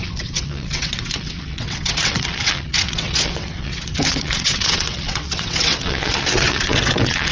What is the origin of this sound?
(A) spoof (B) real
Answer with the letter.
A